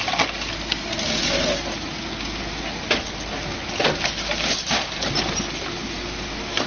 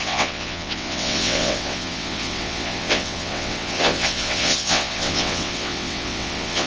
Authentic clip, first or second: first